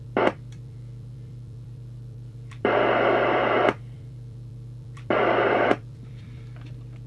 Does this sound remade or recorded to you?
remade